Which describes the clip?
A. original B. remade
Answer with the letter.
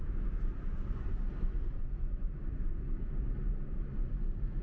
B